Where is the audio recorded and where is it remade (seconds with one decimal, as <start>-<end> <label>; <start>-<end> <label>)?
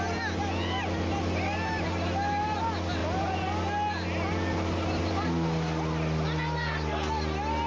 0.0-7.7 recorded